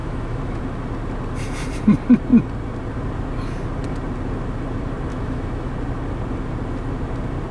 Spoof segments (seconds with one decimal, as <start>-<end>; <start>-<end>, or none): 0.0-0.6; 5.1-5.7